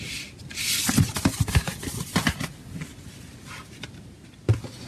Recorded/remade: recorded